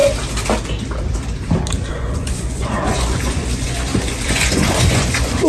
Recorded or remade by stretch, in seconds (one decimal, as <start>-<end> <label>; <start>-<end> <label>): 0.0-1.9 recorded; 1.9-5.5 remade